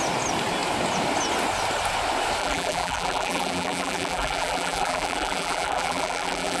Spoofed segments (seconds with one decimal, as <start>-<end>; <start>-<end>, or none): 2.4-6.6